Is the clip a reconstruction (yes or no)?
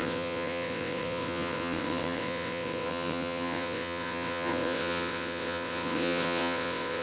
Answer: yes